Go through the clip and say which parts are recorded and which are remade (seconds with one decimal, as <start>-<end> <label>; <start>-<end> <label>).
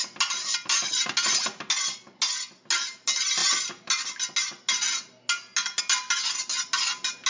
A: 0.0-7.3 recorded